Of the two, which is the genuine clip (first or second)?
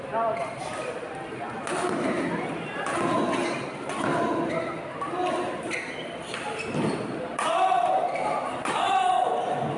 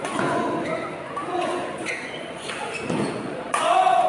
first